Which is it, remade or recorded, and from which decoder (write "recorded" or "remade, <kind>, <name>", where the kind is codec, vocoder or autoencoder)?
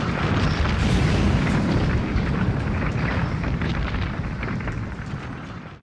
remade, vocoder, BigVGAN v2